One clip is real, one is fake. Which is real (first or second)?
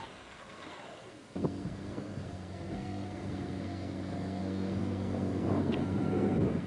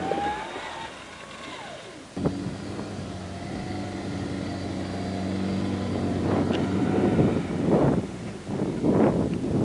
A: second